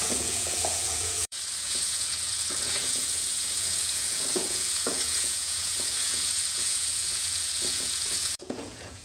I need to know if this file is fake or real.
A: fake